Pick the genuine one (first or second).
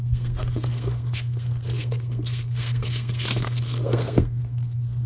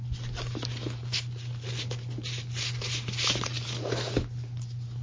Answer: second